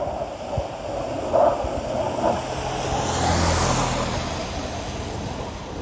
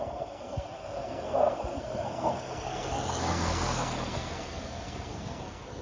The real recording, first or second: first